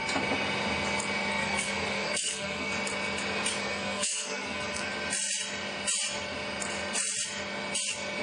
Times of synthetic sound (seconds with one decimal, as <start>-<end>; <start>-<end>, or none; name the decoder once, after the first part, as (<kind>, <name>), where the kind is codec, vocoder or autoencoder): 1.3-2.7 (codec, SNAC); 3.6-4.9